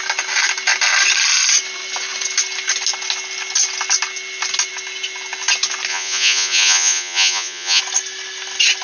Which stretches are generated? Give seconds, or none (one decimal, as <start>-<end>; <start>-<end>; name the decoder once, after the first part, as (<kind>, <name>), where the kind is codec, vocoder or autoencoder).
5.9-7.8 (vocoder, Vocos)